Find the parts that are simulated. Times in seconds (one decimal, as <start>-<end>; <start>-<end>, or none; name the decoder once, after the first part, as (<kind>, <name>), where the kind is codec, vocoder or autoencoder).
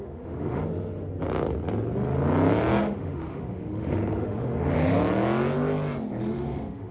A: 0.0-0.6 (autoencoder, DAC-VAE); 2.8-5.0; 6.2-6.9